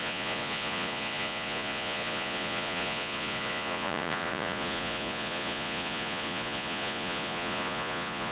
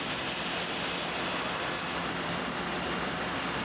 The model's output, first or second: first